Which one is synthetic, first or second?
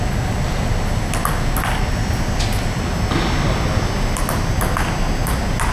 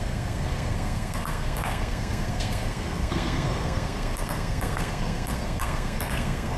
second